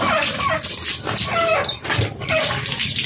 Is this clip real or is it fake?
real